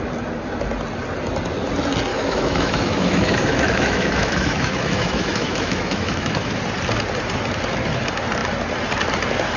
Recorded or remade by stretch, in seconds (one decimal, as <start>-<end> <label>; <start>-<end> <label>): 0.0-2.1 recorded; 2.1-6.6 remade; 6.6-9.6 recorded